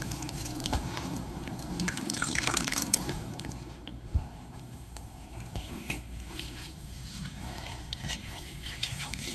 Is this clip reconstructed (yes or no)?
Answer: yes